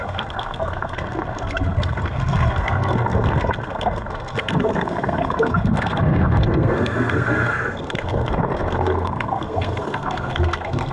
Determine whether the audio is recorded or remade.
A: remade